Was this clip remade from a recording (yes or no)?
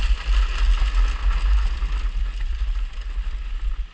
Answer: no